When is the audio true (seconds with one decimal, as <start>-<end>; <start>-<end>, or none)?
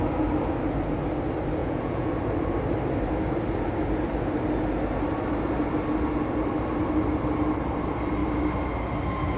0.0-1.6; 2.1-9.4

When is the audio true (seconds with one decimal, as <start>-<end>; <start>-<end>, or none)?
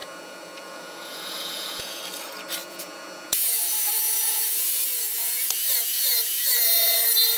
2.0-2.6; 6.5-7.4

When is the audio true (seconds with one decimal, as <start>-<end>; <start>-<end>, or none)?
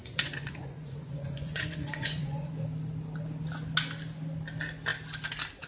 2.5-5.7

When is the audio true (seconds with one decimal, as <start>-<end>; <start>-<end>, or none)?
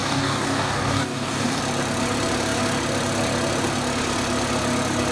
1.6-5.1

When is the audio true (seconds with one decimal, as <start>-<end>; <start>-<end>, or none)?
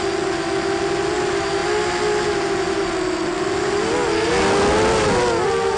0.0-5.8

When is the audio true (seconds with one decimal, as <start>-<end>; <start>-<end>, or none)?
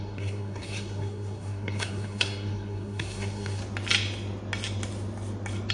3.6-5.7